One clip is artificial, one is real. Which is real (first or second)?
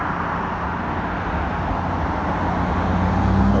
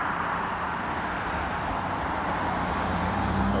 first